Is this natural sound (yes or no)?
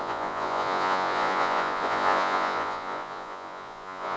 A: no